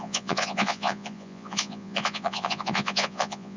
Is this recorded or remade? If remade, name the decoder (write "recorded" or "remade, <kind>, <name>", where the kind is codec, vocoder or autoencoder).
remade, vocoder, Vocos